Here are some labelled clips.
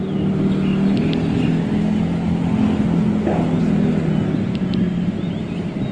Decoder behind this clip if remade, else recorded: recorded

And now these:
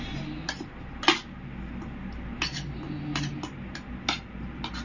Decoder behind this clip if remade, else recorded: recorded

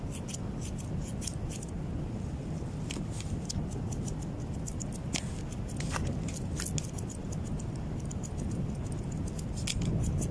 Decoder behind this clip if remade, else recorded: recorded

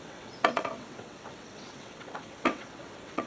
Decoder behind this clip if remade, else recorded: remade, vocoder, WaveNeXt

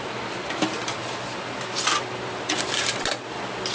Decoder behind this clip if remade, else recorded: recorded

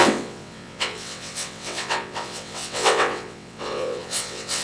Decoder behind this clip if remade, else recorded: remade, vocoder, WaveNeXt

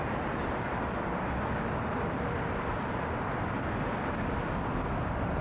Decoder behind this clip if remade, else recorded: recorded